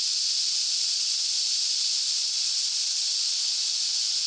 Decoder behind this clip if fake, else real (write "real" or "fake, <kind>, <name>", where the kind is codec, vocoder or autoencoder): real